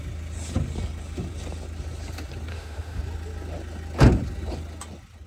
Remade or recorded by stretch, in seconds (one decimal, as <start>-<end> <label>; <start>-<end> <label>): 0.0-2.5 recorded; 2.5-3.0 remade; 3.0-5.3 recorded